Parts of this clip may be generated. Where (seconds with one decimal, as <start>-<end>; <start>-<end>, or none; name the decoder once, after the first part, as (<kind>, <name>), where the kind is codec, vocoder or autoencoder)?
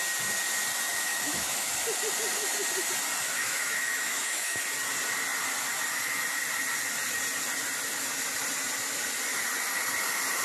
1.1-1.7 (autoencoder, DAC-VAE); 3.4-4.6